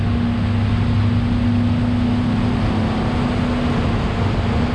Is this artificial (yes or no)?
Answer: no